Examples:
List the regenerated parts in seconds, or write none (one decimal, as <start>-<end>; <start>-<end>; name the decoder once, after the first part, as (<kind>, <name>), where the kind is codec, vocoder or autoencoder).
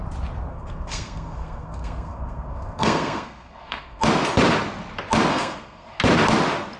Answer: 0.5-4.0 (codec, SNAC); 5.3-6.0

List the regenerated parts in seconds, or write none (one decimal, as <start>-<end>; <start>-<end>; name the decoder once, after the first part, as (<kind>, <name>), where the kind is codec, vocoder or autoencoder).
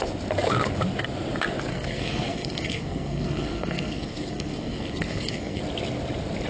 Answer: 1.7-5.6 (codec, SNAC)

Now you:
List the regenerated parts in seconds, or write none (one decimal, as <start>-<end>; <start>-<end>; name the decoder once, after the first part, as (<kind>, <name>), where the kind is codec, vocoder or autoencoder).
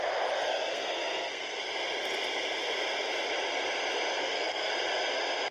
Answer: 0.7-1.6 (codec, SNAC); 4.2-4.7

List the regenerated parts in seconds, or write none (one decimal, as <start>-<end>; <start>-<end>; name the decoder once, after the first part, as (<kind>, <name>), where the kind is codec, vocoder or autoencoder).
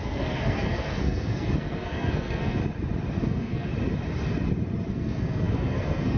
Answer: 0.0-2.6 (codec, SNAC); 3.2-3.7; 4.9-6.2